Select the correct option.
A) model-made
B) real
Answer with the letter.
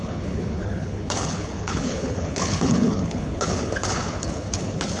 A